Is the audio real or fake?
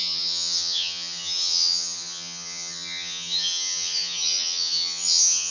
fake